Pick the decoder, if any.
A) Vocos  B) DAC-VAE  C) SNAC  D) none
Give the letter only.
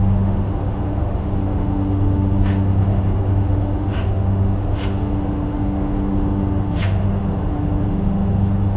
B